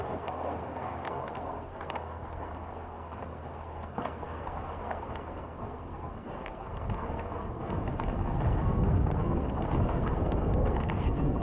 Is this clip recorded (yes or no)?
no